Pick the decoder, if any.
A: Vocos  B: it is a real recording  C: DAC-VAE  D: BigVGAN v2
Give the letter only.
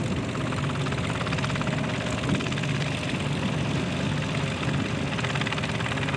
B